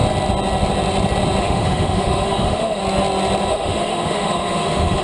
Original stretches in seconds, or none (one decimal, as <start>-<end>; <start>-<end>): 0.0-1.4; 2.8-3.5